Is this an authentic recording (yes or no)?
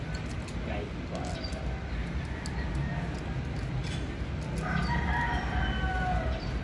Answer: yes